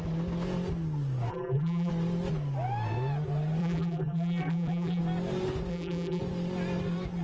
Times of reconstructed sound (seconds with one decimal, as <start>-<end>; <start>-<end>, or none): 1.3-1.9; 3.6-5.0; 5.7-6.2

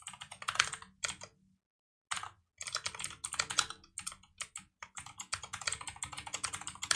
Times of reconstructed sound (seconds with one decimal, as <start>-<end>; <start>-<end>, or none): 0.0-0.4; 4.5-5.3; 6.5-7.0

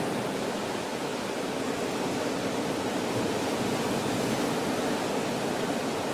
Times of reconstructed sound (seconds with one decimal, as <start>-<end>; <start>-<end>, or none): none

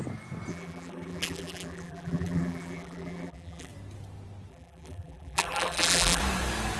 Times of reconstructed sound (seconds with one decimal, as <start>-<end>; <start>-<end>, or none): 0.5-3.7; 4.5-6.2

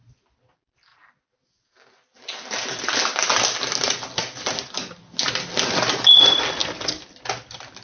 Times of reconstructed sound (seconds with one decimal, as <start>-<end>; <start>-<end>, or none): none